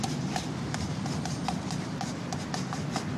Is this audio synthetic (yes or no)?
yes